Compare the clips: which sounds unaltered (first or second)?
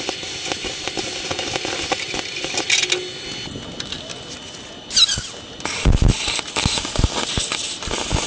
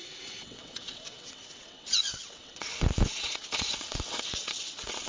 first